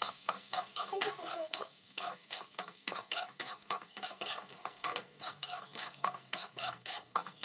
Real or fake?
fake